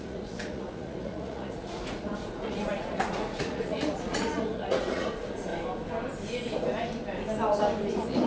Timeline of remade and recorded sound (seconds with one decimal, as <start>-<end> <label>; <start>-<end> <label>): 0.0-5.5 remade; 5.5-7.9 recorded; 7.9-8.3 remade